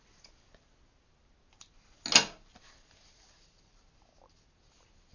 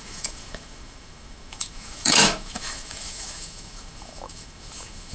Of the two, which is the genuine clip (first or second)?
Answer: first